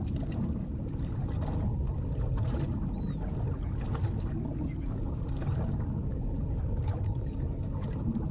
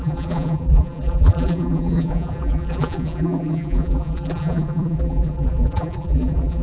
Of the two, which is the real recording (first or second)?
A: first